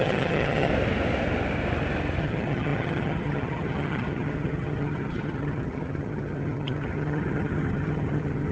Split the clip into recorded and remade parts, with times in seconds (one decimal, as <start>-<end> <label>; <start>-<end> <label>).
0.0-0.7 remade; 0.7-2.2 recorded; 2.2-8.5 remade